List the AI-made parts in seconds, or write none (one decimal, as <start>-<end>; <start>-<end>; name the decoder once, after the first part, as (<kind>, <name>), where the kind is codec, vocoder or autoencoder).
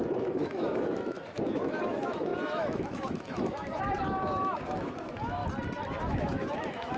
0.0-5.4 (autoencoder, DAC-VAE); 6.0-7.0